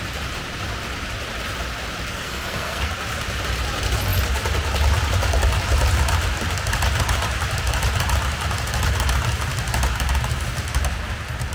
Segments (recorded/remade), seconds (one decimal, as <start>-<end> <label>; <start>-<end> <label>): 0.0-2.1 recorded; 2.1-2.9 remade; 2.9-11.5 recorded